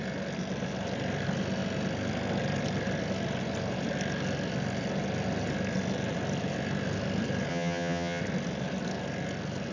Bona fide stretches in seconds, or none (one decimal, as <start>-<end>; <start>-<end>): 0.0-7.5; 8.2-9.7